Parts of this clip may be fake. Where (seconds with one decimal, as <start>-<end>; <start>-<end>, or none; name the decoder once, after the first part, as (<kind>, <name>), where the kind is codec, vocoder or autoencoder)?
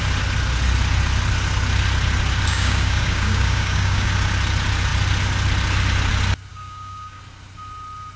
2.5-4.1 (codec, DAC); 6.5-7.2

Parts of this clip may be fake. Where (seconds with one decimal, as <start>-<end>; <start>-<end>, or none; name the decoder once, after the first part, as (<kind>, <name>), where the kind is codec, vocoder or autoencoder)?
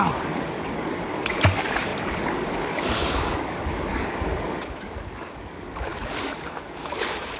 0.0-7.4 (codec, DAC)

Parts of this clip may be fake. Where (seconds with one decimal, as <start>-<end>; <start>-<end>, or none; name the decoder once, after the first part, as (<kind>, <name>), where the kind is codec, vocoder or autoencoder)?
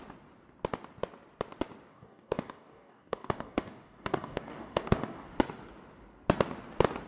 1.9-5.3 (codec, DAC)